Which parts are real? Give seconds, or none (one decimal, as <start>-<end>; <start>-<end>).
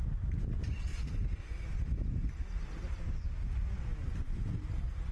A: 0.0-5.1